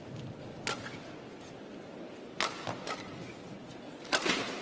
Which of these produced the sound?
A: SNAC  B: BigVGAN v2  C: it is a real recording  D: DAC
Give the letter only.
C